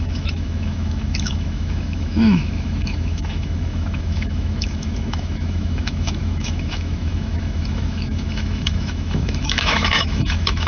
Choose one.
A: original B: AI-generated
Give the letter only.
B